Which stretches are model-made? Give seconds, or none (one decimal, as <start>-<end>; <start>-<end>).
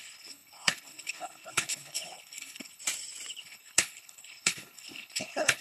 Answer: 0.0-2.8; 3.3-5.6